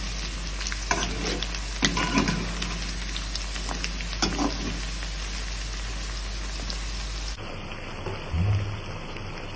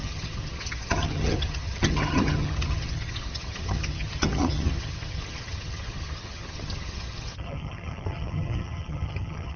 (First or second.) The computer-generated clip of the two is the second